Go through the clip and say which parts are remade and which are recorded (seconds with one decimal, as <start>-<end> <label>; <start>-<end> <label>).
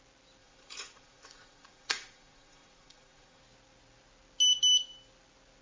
0.0-0.4 recorded; 0.4-3.4 remade; 3.4-5.6 recorded